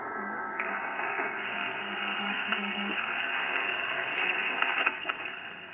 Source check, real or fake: fake